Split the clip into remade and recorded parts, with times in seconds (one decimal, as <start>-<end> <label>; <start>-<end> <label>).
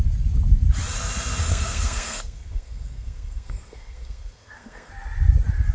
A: 0.0-1.5 recorded; 1.5-4.9 remade; 4.9-5.7 recorded